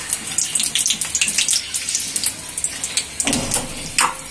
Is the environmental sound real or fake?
real